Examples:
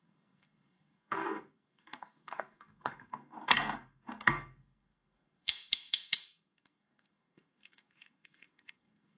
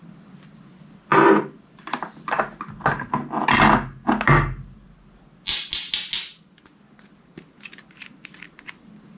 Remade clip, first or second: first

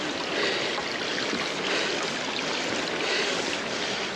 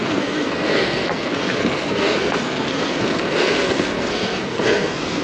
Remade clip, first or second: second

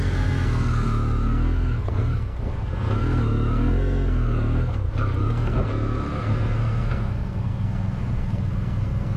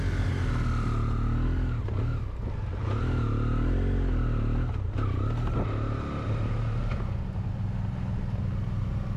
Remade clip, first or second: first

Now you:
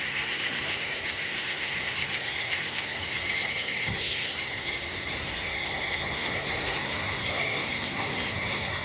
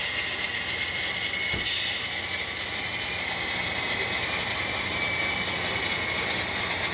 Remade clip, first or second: first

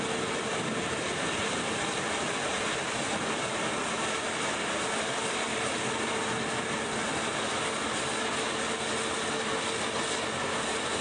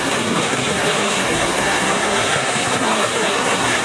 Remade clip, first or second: second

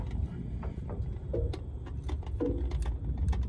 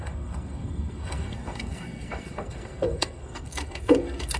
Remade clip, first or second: second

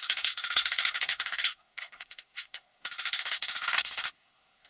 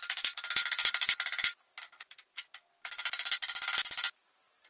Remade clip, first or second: first